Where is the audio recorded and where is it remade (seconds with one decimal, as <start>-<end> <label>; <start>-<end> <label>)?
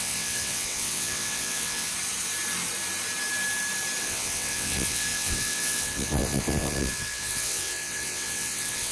0.0-1.9 remade; 1.9-4.0 recorded; 4.0-8.9 remade